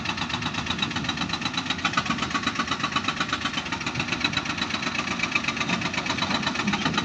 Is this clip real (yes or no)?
yes